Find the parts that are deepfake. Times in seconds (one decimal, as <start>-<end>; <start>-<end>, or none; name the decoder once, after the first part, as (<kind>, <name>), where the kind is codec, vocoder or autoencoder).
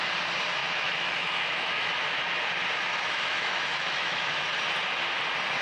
0.6-1.9 (autoencoder, DAC-VAE); 2.9-4.5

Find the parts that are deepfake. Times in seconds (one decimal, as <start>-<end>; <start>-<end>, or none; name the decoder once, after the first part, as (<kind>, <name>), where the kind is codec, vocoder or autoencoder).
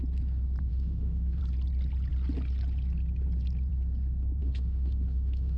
0.7-1.4 (autoencoder, DAC-VAE); 4.4-5.6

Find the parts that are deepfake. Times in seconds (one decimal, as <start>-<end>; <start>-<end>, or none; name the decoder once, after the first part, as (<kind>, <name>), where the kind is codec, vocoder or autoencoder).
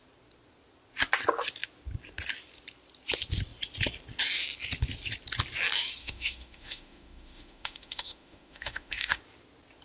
6.0-9.2 (autoencoder, DAC-VAE)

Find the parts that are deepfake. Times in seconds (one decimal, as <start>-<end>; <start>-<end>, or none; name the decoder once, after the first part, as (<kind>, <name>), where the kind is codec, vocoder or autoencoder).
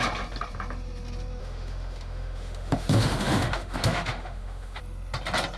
1.4-4.8 (autoencoder, DAC-VAE)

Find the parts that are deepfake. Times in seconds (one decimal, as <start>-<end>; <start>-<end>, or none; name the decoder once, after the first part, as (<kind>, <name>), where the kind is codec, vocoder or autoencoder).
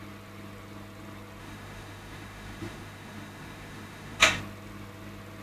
1.4-4.4 (autoencoder, DAC-VAE)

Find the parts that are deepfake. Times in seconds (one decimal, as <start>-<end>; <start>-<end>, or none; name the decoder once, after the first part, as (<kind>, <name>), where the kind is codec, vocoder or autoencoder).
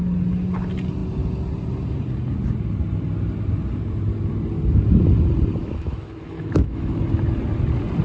5.6-7.0 (autoencoder, DAC-VAE)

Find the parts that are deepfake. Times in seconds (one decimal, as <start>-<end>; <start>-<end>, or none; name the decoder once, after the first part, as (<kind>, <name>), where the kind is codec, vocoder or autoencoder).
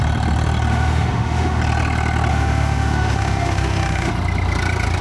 0.7-1.6 (autoencoder, DAC-VAE); 2.3-4.1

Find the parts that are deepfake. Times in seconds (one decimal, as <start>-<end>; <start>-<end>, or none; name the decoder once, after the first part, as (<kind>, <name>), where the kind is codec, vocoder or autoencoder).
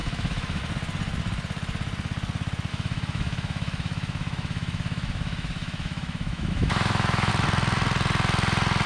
0.0-0.6 (autoencoder, DAC-VAE); 2.7-7.3